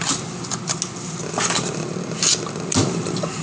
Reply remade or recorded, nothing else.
recorded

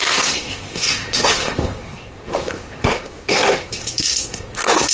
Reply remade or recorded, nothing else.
remade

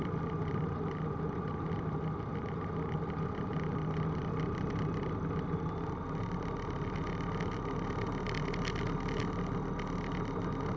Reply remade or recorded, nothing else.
recorded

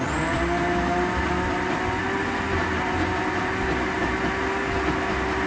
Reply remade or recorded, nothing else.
recorded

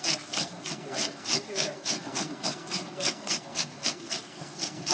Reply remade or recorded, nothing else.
remade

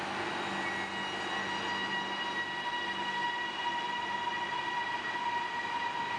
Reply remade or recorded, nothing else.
recorded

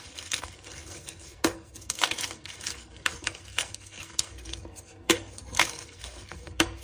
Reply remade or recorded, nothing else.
remade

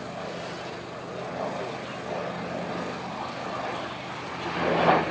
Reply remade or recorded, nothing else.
recorded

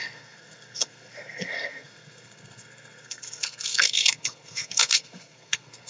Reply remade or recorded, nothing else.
remade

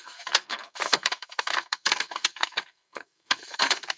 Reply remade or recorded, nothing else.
remade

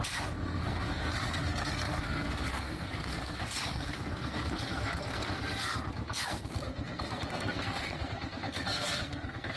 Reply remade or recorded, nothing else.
remade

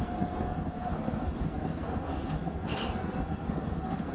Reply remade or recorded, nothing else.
remade